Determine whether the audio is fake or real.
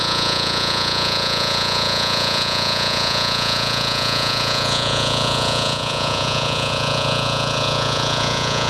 fake